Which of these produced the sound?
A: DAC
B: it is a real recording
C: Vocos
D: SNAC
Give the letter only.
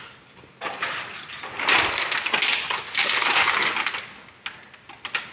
B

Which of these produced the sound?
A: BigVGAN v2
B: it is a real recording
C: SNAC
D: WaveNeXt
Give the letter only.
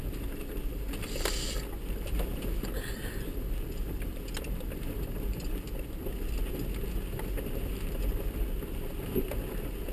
B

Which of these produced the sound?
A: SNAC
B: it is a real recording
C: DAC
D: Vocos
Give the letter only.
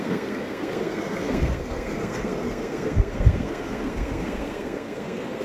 A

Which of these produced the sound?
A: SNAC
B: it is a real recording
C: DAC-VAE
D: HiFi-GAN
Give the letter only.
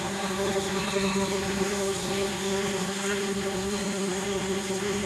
A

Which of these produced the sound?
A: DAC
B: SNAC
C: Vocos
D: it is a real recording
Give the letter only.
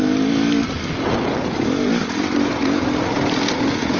D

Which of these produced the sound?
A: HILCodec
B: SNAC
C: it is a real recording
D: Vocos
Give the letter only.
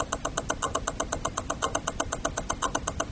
C